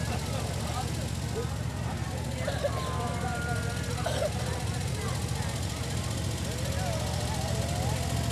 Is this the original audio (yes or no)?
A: yes